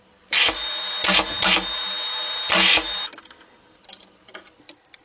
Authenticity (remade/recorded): recorded